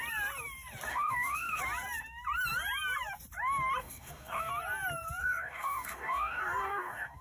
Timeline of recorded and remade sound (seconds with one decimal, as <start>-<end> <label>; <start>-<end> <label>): 0.0-0.9 recorded; 0.9-1.6 remade; 1.6-3.8 recorded; 3.8-4.5 remade; 4.5-5.2 recorded; 5.2-7.2 remade